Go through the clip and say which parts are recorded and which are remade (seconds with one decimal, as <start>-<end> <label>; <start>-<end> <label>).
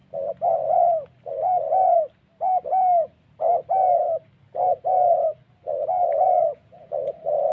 0.0-6.0 recorded; 6.0-7.5 remade